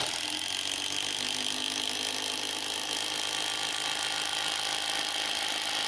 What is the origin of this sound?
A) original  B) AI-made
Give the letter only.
A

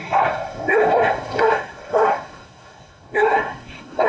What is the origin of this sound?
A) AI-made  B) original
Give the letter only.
A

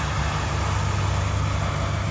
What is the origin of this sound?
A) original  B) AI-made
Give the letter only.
A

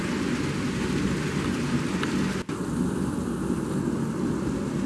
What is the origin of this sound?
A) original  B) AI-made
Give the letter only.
A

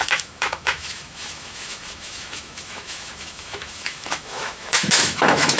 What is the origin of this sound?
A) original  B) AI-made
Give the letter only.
B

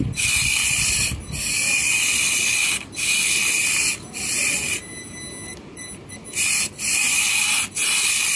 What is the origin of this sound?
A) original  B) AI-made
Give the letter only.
A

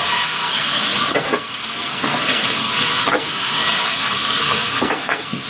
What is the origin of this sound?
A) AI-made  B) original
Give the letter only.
A